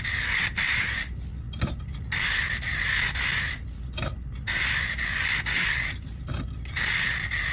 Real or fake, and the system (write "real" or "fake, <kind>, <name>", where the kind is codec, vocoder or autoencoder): real